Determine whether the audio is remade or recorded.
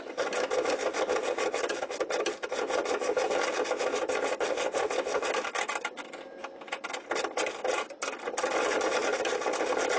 recorded